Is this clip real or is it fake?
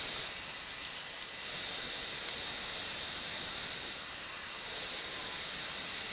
real